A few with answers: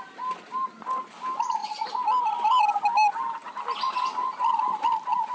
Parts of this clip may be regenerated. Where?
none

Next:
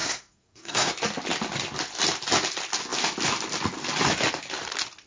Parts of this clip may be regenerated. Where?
0.0-0.9 (codec, SNAC)

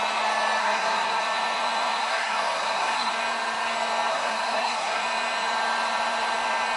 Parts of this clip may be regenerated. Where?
0.6-1.2 (codec, SNAC); 2.0-3.1; 4.1-5.0